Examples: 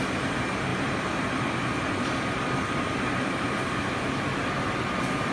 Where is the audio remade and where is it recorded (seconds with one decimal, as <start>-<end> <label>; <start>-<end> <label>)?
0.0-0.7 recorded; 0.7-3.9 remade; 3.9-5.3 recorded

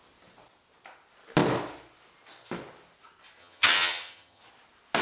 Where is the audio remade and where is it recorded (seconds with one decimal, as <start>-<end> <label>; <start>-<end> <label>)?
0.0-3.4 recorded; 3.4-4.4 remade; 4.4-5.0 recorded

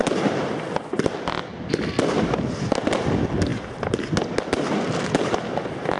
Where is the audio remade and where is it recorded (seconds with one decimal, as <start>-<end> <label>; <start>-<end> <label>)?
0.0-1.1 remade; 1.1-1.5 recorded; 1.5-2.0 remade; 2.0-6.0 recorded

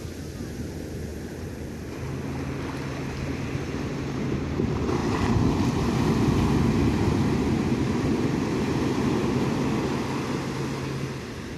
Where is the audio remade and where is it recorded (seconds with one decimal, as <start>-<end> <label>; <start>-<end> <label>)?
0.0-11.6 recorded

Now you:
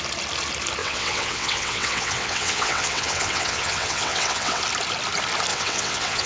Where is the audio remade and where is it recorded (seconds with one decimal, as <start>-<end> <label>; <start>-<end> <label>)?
0.0-0.8 recorded; 0.8-4.6 remade; 4.6-5.5 recorded; 5.5-6.3 remade